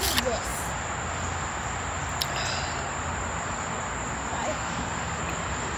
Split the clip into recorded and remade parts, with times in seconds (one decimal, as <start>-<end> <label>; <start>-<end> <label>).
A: 0.0-4.5 recorded; 4.5-5.2 remade; 5.2-5.8 recorded